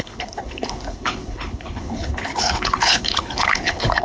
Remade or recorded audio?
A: remade